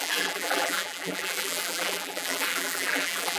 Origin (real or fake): fake